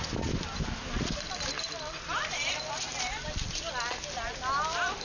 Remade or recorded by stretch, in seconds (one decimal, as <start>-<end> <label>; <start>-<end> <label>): 0.0-5.0 recorded